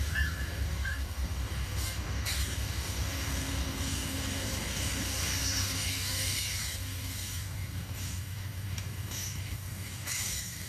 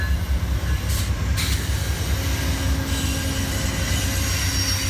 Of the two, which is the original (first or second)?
second